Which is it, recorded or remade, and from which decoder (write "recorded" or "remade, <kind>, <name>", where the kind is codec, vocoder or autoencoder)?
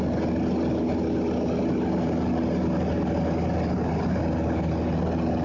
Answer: recorded